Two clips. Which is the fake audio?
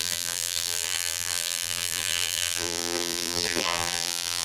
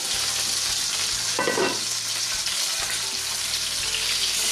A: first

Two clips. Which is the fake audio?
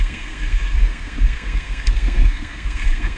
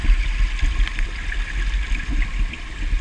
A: first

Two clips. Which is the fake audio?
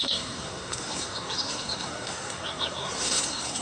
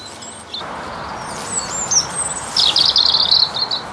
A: first